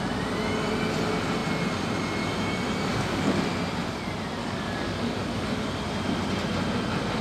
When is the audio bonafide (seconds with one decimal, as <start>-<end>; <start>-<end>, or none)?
0.0-2.9; 3.4-4.4; 5.8-7.2